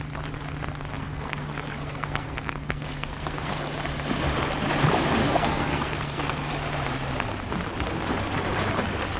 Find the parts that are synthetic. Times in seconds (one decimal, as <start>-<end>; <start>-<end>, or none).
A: 0.9-3.6; 5.2-6.5